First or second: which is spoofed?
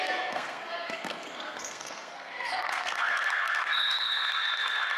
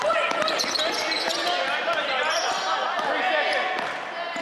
first